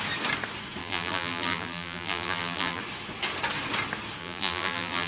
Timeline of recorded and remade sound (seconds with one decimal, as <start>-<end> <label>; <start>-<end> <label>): 0.0-0.8 recorded; 0.8-2.8 remade; 2.8-4.2 recorded; 4.2-5.1 remade